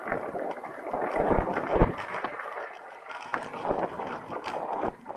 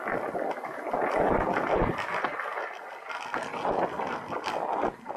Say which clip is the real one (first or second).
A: second